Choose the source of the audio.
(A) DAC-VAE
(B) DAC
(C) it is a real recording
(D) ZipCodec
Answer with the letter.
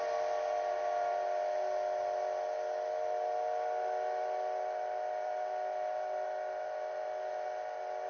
C